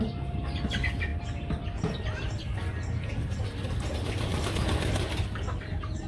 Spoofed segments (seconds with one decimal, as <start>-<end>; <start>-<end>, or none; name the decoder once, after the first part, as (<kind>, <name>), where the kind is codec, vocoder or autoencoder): none